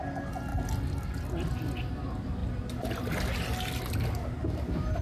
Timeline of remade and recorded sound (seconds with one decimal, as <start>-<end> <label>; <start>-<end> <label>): 0.0-2.4 recorded; 2.4-3.1 remade; 3.1-5.0 recorded